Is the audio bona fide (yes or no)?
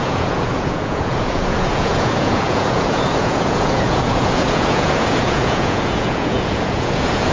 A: no